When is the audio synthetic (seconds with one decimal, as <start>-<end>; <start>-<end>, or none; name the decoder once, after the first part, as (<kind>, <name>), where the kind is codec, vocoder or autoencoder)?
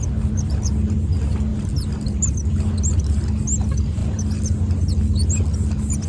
none